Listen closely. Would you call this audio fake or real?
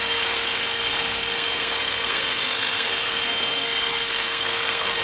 fake